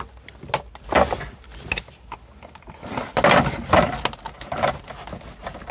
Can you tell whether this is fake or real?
real